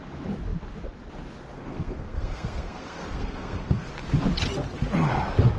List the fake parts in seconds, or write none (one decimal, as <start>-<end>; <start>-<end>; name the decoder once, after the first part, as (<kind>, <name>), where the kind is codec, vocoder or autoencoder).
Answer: 1.5-3.9 (codec, SNAC)